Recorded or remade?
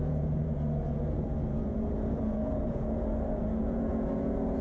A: remade